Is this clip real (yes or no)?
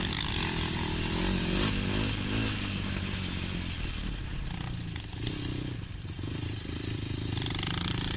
yes